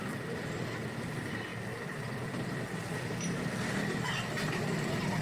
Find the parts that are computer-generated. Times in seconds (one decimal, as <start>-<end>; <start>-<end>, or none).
none